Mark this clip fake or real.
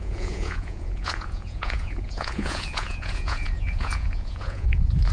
fake